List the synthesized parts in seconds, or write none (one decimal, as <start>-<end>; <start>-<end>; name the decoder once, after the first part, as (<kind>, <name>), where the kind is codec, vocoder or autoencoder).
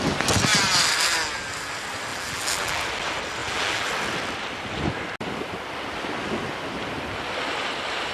2.1-2.8 (vocoder, BigVGAN v2); 3.4-3.9